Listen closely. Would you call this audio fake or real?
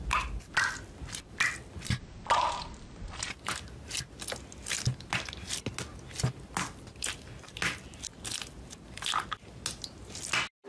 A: real